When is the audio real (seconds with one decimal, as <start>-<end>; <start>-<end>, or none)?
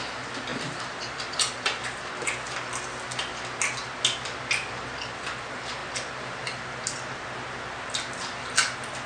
0.0-0.5; 2.4-9.1